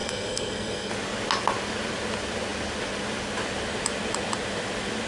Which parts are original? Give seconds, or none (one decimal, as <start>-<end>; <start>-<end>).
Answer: 0.9-5.1